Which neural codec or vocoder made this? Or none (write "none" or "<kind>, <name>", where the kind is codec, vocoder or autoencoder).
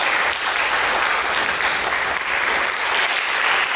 none